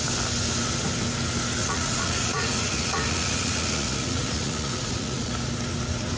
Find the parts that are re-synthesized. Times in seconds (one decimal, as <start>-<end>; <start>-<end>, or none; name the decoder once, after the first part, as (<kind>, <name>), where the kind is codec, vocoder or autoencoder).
1.6-5.3 (vocoder, Vocos)